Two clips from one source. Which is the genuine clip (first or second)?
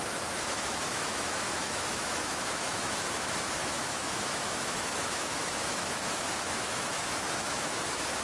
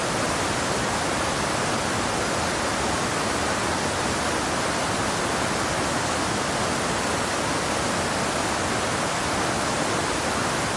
second